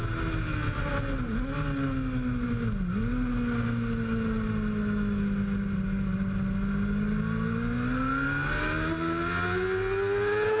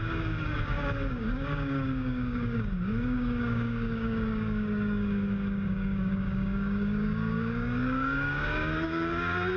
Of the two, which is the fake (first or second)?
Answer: second